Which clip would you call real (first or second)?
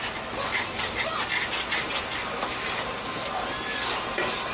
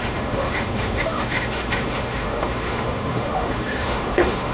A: first